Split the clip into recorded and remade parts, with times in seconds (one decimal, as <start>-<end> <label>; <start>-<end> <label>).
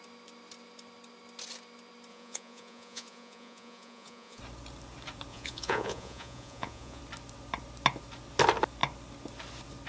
0.0-2.1 recorded; 2.1-4.4 remade; 4.4-5.3 recorded; 5.3-7.0 remade; 7.0-9.9 recorded